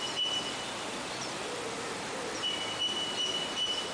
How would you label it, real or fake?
real